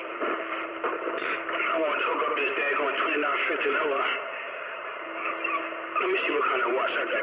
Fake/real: fake